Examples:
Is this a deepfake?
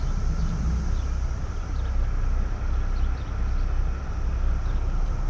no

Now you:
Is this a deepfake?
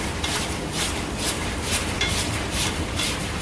yes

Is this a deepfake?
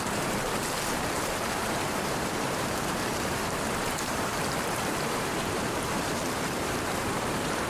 yes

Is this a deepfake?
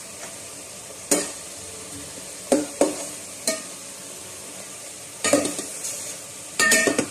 yes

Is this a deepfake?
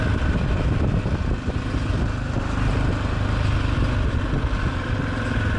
no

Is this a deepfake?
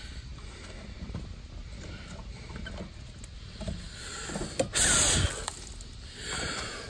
no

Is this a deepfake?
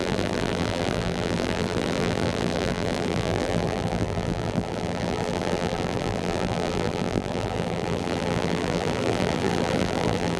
yes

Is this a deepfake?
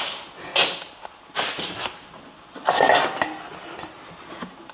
no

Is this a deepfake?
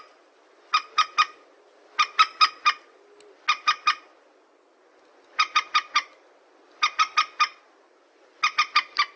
no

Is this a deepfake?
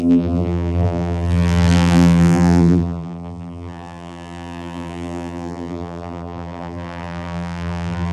yes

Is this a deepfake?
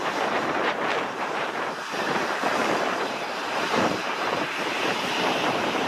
yes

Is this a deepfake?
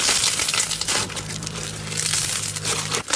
yes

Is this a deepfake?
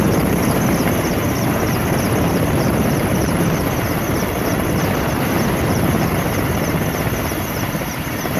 yes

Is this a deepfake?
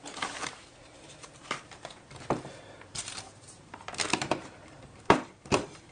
yes